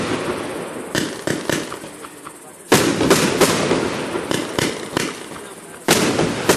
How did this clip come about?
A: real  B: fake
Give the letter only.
A